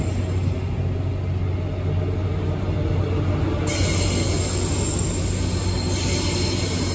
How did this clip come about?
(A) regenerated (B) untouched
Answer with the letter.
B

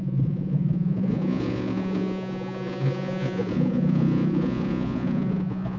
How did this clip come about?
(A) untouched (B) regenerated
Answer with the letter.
B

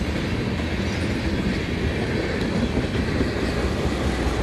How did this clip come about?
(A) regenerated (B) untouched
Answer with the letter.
B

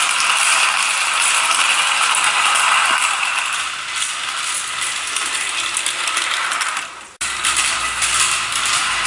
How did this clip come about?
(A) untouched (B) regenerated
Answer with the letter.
A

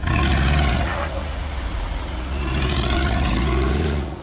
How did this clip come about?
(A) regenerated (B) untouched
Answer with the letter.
A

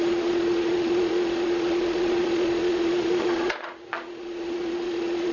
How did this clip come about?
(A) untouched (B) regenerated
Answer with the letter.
B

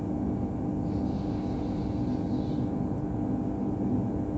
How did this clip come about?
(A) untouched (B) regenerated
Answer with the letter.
A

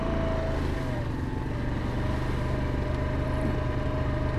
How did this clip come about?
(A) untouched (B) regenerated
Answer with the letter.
A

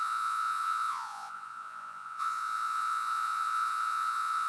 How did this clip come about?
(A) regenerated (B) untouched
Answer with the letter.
A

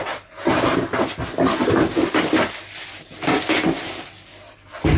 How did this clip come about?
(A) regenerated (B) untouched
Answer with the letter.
B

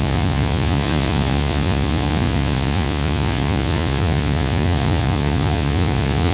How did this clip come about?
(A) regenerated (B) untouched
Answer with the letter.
A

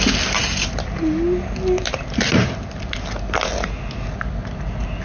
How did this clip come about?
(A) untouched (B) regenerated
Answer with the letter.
A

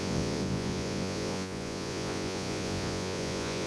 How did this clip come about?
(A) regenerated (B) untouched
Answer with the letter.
A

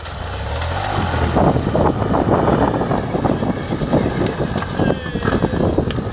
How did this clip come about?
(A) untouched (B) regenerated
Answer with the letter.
A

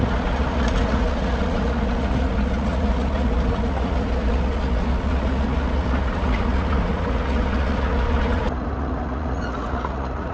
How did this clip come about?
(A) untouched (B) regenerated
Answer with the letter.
B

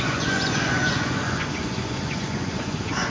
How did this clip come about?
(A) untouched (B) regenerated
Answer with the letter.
B